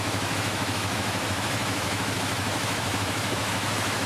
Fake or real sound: fake